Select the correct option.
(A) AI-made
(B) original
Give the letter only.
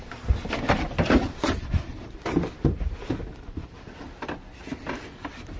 A